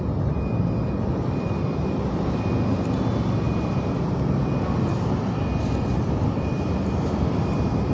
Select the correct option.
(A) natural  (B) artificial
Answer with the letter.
A